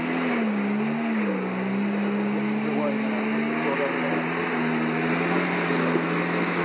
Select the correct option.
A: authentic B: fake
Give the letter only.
A